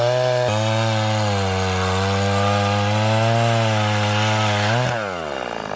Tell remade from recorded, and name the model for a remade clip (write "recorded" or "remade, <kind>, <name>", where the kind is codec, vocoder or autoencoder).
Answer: recorded